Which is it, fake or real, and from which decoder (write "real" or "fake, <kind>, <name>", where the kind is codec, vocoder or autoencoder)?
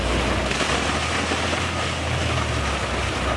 real